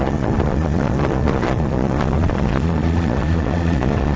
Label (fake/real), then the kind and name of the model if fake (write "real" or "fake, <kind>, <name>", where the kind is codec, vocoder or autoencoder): fake, vocoder, Vocos